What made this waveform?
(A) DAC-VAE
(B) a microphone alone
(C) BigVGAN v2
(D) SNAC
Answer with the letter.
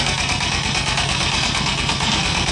D